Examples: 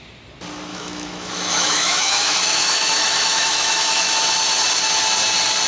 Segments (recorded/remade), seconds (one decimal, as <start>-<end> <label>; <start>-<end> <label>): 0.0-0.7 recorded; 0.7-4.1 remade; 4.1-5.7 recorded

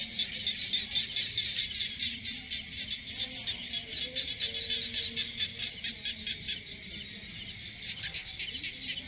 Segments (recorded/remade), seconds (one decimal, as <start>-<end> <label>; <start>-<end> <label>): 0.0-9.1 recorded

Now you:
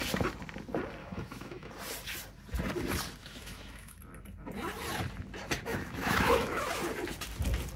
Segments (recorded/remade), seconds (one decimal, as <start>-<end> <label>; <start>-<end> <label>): 0.0-1.0 recorded; 1.0-1.7 remade; 1.7-3.2 recorded; 3.2-4.0 remade; 4.0-5.7 recorded; 5.7-6.7 remade; 6.7-7.8 recorded

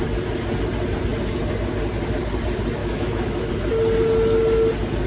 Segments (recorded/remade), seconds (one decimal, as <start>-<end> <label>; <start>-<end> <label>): 0.0-2.8 recorded; 2.8-3.5 remade; 3.5-5.1 recorded